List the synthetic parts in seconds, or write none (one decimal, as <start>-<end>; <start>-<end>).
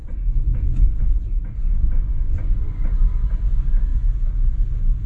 0.0-1.0; 1.6-3.0